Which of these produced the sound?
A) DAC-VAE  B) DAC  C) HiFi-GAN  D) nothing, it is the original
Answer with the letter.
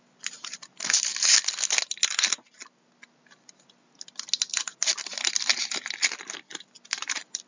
D